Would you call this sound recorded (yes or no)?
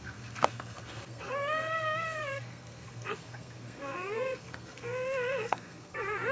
no